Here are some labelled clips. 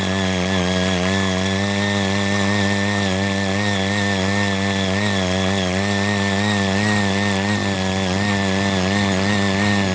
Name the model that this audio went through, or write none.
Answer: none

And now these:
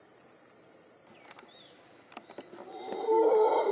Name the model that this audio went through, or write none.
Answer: none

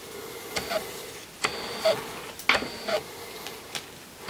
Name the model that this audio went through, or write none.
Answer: none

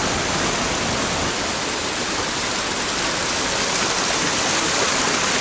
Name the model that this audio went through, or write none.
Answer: none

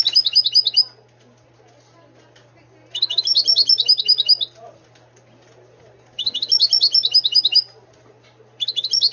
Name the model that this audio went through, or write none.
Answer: none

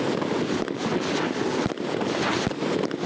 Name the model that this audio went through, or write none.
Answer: none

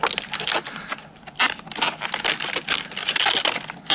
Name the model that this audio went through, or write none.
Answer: none